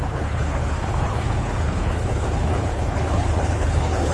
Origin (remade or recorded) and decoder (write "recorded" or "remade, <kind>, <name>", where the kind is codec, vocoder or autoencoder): remade, codec, HILCodec